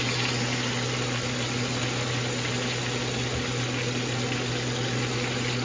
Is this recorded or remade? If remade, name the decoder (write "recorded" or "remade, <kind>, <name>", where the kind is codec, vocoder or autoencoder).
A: recorded